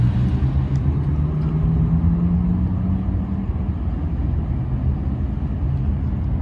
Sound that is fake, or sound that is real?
real